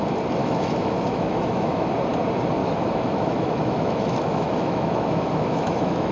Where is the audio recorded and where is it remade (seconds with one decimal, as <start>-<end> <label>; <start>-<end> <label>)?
0.0-0.4 recorded; 0.4-1.9 remade; 1.9-2.6 recorded; 2.6-6.1 remade

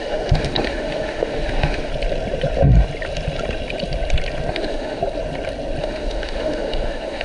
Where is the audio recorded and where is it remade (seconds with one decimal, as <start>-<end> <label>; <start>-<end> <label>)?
0.0-1.9 remade; 1.9-4.5 recorded; 4.5-5.0 remade; 5.0-5.8 recorded; 5.8-7.2 remade

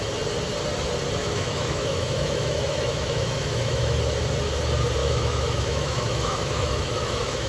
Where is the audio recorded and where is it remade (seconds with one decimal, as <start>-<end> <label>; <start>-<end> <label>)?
0.0-1.2 recorded; 1.2-4.0 remade; 4.0-5.0 recorded; 5.0-7.5 remade